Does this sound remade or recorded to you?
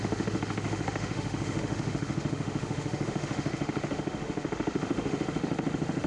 remade